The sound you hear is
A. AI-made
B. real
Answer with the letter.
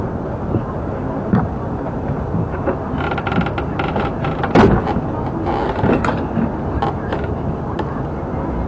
B